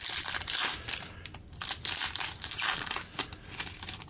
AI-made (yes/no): no